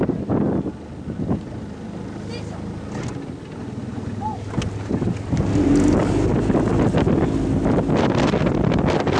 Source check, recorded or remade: recorded